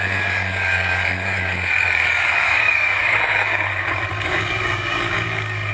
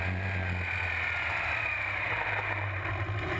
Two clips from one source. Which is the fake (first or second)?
first